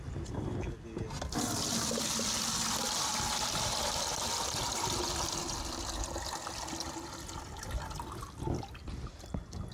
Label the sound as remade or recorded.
recorded